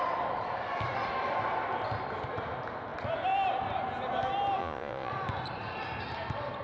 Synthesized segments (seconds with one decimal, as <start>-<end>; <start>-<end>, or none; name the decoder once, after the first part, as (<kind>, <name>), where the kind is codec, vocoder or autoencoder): 4.6-5.1 (vocoder, Vocos)